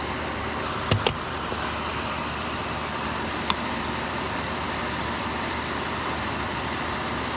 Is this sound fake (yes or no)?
yes